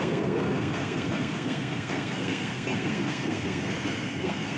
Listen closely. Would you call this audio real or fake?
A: fake